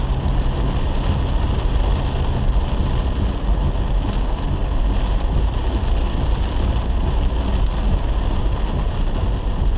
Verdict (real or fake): real